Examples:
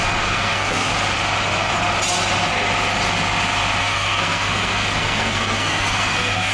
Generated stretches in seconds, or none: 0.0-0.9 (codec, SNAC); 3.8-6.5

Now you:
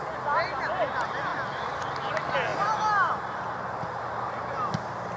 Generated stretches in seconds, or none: none

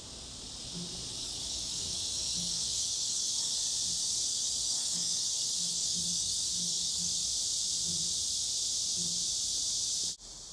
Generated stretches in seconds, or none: 1.1-3.6 (codec, DAC); 4.0-7.1

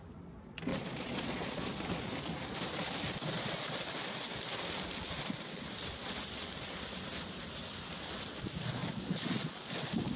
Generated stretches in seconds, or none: 0.7-1.9 (vocoder, Vocos); 8.8-9.7